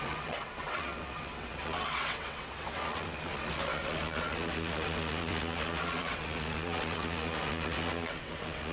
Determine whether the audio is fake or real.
fake